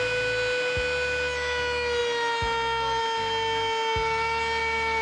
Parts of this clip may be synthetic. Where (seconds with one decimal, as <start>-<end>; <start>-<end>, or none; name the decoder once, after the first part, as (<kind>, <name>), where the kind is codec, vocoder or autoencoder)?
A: none